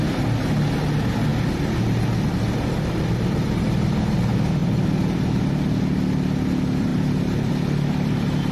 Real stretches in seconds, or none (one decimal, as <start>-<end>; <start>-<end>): 0.0-4.6; 5.5-6.9; 7.5-8.5